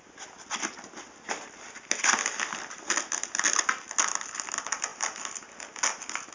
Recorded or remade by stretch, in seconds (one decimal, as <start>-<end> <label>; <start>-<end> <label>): 0.0-6.3 recorded